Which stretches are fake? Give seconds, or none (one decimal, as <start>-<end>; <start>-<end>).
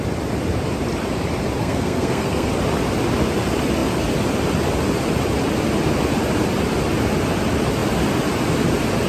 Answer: 1.6-2.5